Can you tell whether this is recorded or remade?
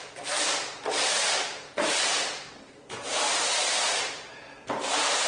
remade